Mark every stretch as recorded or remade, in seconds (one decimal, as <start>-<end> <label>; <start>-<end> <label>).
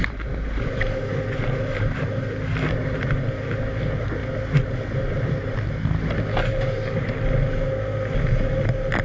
0.0-9.0 recorded